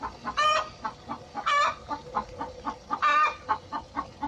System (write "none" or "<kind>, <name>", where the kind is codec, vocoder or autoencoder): none